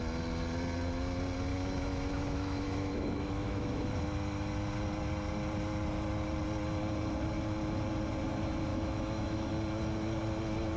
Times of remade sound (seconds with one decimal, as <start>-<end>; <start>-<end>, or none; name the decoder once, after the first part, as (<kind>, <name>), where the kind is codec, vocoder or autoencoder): 1.5-4.0 (autoencoder, DAC-VAE); 8.7-9.5